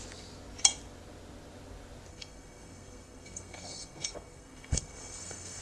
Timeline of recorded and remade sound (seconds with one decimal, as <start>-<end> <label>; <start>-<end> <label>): 0.0-2.1 recorded; 2.1-5.6 remade